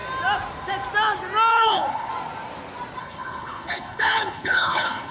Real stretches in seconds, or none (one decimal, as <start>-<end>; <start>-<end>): 0.0-1.5; 2.1-3.0